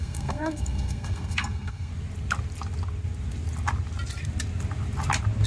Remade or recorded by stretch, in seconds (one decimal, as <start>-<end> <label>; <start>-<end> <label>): 0.0-1.9 remade; 1.9-5.5 recorded